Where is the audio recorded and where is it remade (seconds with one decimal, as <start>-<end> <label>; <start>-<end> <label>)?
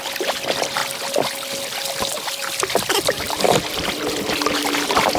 0.0-5.2 recorded